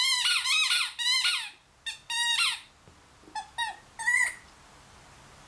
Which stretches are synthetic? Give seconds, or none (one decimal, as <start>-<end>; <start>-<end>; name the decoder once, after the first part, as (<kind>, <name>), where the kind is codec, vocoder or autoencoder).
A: none